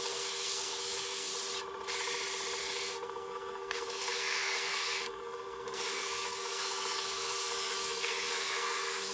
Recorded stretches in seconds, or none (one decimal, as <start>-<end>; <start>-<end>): 1.3-2.6